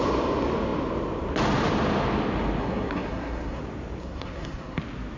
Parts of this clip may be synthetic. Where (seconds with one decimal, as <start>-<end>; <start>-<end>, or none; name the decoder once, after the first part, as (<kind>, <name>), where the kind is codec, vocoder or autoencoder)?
2.6-3.6 (codec, SNAC); 4.0-4.8